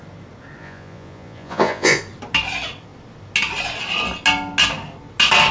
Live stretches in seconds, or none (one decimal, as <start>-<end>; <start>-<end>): 0.0-0.6; 2.0-5.5